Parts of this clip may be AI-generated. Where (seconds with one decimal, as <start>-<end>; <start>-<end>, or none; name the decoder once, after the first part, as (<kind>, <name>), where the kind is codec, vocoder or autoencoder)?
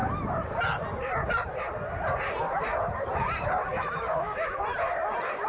3.7-4.6 (autoencoder, DAC-VAE)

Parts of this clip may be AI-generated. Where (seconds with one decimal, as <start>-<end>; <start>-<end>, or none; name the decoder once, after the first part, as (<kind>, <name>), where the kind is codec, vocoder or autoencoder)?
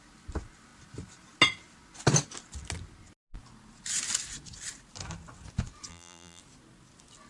5.9-6.4 (vocoder, BigVGAN v2)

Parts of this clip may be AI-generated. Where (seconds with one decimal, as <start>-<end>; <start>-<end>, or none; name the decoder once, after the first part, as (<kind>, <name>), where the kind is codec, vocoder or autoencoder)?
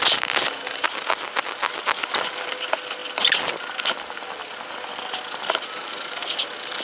none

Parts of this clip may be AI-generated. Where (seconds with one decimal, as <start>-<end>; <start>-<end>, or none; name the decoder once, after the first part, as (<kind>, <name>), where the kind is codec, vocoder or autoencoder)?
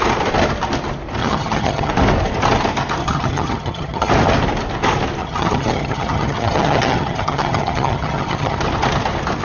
1.2-1.9 (vocoder, HiFi-GAN); 3.0-4.1; 5.2-8.6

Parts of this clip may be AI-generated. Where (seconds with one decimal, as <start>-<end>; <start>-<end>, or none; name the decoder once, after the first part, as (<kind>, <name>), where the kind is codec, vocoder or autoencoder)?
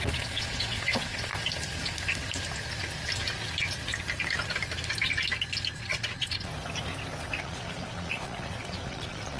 0.0-1.3 (vocoder, Vocos); 5.8-6.5; 7.4-9.4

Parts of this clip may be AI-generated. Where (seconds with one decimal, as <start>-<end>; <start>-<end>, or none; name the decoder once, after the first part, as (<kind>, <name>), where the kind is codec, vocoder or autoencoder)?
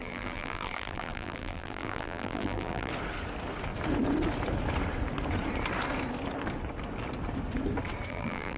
0.0-2.9 (vocoder, BigVGAN v2); 8.1-8.6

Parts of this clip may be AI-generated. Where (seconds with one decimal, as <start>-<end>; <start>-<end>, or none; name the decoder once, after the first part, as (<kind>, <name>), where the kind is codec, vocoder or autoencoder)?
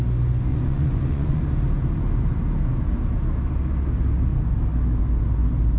0.5-1.4 (vocoder, Vocos)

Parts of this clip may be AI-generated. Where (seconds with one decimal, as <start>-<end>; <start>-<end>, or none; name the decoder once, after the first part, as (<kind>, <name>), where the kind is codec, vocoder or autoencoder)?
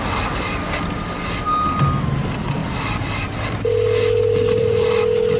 2.6-5.0 (vocoder, BigVGAN v2)